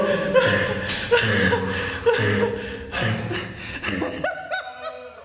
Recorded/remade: recorded